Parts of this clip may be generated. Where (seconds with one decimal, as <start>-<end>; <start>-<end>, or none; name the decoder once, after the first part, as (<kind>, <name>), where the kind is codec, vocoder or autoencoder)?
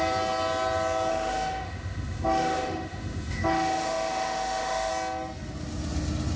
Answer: 1.1-4.9 (autoencoder, DAC-VAE)